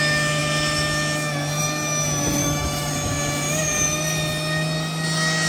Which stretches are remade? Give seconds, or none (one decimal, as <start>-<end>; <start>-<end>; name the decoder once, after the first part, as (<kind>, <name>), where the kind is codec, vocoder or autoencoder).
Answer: 2.4-2.9 (autoencoder, DAC-VAE)